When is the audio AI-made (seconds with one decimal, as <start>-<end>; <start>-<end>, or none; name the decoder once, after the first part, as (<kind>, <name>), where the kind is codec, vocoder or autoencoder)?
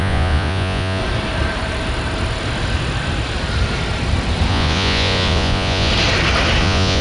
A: 0.0-1.0 (vocoder, Vocos); 4.5-5.9; 6.6-7.0